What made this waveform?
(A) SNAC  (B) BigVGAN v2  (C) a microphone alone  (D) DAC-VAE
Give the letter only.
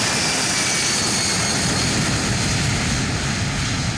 C